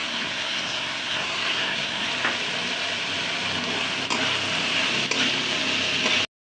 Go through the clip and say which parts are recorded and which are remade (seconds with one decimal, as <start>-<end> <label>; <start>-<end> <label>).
0.0-2.1 remade; 2.1-6.6 recorded